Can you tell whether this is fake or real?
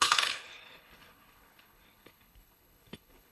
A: fake